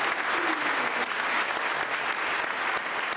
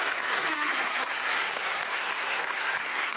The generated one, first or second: second